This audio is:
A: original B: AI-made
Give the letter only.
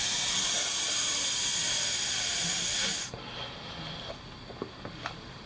A